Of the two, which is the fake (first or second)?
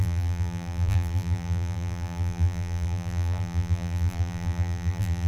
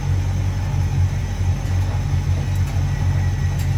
first